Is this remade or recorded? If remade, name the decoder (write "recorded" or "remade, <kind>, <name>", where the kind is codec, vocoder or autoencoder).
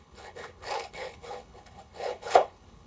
remade, codec, HILCodec